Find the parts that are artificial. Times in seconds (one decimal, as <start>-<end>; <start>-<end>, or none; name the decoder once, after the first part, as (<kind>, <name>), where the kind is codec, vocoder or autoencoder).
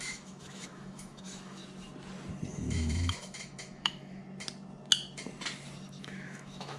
0.0-1.6 (autoencoder, DAC-VAE); 2.5-4.2; 6.0-6.8